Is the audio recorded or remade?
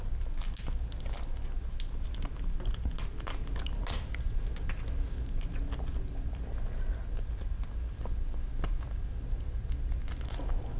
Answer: recorded